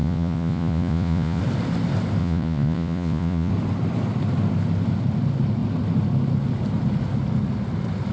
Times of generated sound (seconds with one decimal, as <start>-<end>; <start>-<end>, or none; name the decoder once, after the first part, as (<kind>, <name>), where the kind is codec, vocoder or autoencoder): 0.0-1.4 (vocoder, Vocos); 2.2-3.5